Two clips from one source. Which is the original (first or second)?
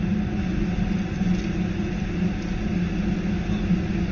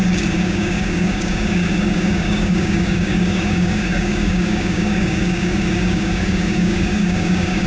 first